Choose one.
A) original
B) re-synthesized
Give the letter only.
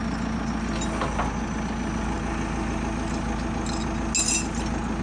A